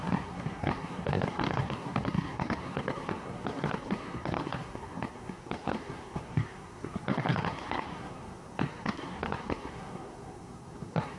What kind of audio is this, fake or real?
fake